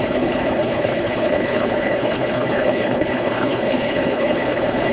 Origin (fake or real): fake